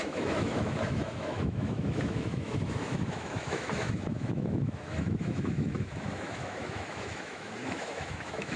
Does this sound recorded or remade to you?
remade